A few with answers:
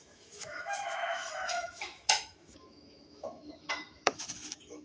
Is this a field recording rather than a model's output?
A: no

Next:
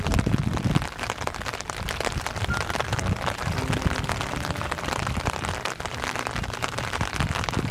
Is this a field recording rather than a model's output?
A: yes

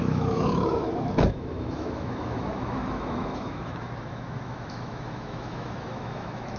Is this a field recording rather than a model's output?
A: no